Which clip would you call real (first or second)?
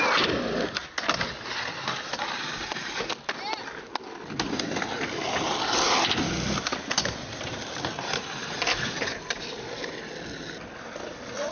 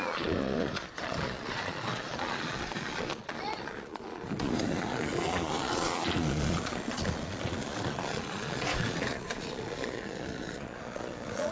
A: first